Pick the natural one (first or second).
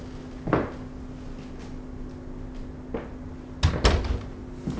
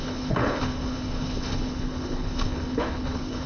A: first